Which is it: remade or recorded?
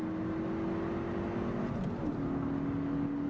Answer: recorded